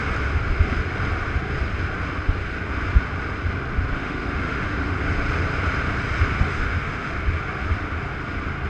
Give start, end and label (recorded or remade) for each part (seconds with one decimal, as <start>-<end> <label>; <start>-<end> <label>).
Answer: 0.0-4.0 recorded; 4.0-5.0 remade; 5.0-6.5 recorded; 6.5-7.1 remade; 7.1-8.7 recorded